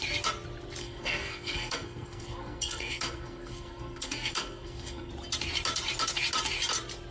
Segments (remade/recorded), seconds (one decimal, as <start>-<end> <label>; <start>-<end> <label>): 0.0-0.8 recorded; 0.8-5.1 remade; 5.1-7.1 recorded